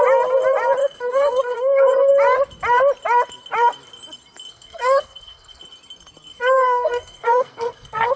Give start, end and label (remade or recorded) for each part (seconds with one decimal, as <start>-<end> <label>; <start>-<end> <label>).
0.0-0.8 recorded; 0.8-2.1 remade; 2.1-4.5 recorded; 4.5-5.6 remade; 5.6-6.3 recorded; 6.3-8.2 remade